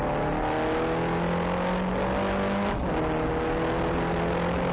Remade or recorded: recorded